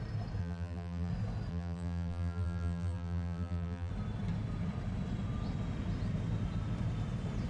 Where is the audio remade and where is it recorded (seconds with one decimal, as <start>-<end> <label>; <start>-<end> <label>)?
0.0-0.4 recorded; 0.4-1.1 remade; 1.1-1.5 recorded; 1.5-3.9 remade; 3.9-7.5 recorded